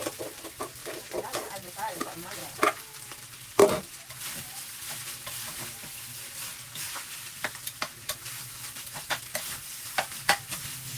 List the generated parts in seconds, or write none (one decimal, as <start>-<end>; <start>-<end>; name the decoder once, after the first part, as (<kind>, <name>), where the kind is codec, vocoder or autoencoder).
5.8-8.8 (vocoder, BigVGAN v2)